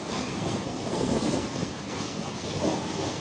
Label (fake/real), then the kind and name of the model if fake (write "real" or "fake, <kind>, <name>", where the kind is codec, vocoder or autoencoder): fake, codec, SNAC